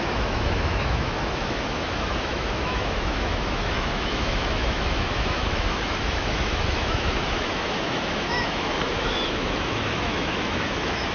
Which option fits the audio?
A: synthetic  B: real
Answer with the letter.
A